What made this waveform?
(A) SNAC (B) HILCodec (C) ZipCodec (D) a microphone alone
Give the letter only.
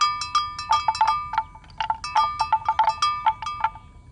D